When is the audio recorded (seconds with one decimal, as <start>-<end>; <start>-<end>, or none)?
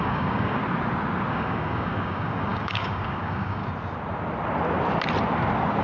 0.6-1.3; 3.6-5.8